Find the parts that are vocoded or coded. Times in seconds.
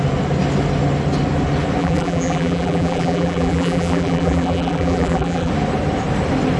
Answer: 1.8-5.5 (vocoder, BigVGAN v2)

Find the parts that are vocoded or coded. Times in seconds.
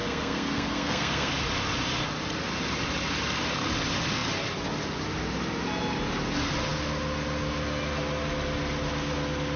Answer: 0.0-1.3 (codec, SNAC)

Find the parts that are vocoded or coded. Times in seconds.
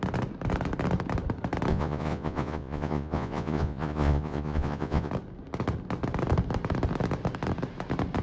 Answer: 1.7-5.1 (vocoder, Vocos)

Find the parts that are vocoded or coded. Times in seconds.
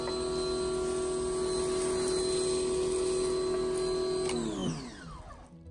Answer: none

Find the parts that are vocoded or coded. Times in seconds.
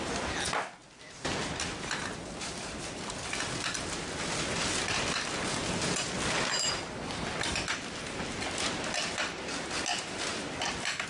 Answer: 0.8-3.0 (vocoder, BigVGAN v2)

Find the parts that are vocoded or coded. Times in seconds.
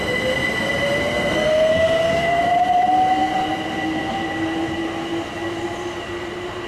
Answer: 1.0-2.4 (codec, SNAC)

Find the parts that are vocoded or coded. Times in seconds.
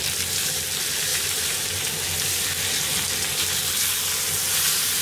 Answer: 1.1-1.7 (vocoder, BigVGAN v2)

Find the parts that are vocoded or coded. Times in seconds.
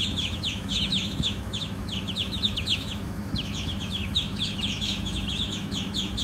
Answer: 0.0-6.2 (autoencoder, DAC-VAE)